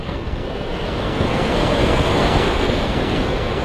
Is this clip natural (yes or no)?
no